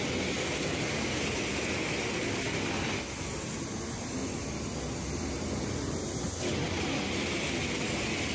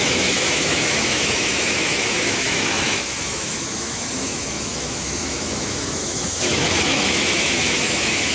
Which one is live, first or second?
first